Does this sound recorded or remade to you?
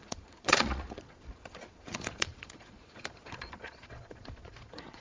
remade